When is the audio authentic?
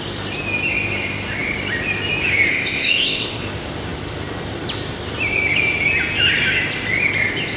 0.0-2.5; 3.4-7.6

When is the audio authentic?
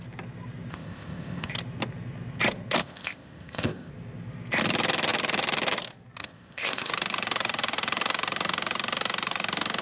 0.0-0.7; 1.5-2.8; 3.9-6.2; 6.9-9.8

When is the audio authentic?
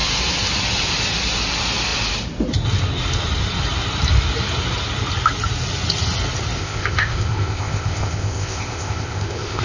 0.0-6.6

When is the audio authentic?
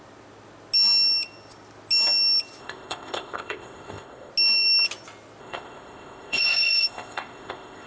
0.0-2.6; 4.3-5.4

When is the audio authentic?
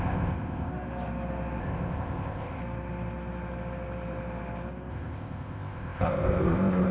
0.7-1.6; 2.6-4.9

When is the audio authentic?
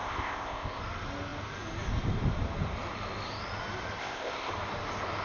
0.8-4.0; 4.5-5.2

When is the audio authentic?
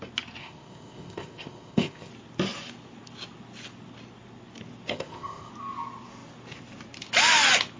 0.0-0.4; 2.1-4.9; 5.5-7.8